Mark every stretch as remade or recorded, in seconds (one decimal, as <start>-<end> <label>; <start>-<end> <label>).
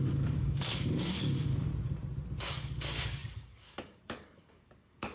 0.0-1.7 remade; 1.7-2.4 recorded; 2.4-5.1 remade